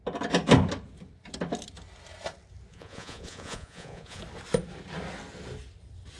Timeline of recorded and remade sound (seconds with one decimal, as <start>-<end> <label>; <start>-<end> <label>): 0.0-2.7 recorded; 2.7-4.2 remade; 4.2-6.2 recorded